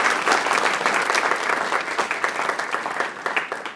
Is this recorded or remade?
recorded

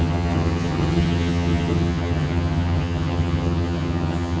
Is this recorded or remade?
remade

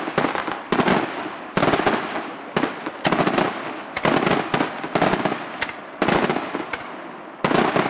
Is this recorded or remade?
recorded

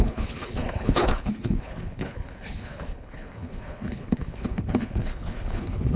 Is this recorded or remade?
remade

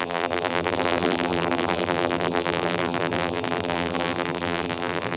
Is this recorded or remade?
remade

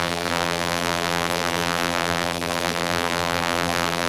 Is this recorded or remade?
remade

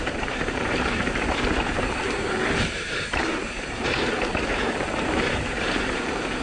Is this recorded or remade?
remade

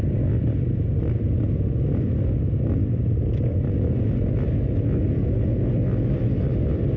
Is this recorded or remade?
recorded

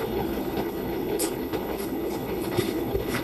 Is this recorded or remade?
remade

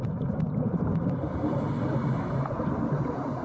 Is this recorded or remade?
recorded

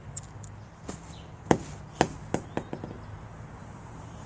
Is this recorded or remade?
recorded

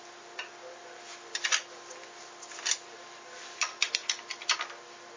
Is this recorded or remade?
recorded